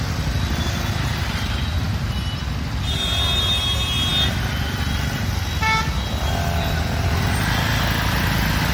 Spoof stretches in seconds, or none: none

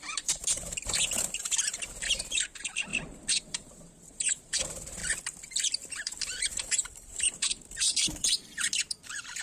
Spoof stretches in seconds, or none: 0.0-5.0 (vocoder, BigVGAN v2); 6.0-9.4

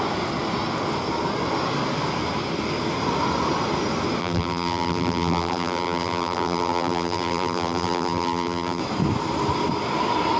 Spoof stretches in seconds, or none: 4.2-8.8 (vocoder, BigVGAN v2)

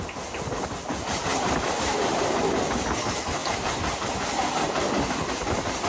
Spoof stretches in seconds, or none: 1.3-2.4 (vocoder, BigVGAN v2); 3.4-5.0

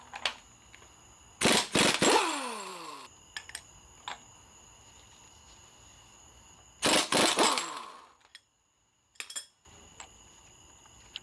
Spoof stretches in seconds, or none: none

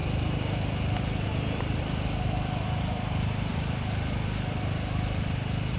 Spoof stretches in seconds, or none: none

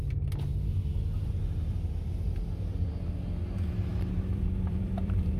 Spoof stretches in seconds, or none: 3.9-5.4 (vocoder, BigVGAN v2)